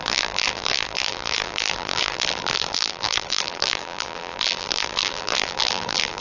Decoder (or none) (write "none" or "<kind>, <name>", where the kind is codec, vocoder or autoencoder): vocoder, BigVGAN v2